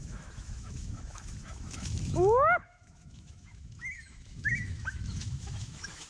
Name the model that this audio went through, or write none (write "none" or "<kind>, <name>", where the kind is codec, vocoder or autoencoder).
autoencoder, DAC-VAE